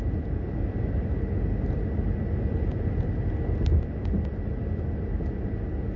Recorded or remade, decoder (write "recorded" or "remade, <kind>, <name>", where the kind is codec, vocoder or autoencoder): recorded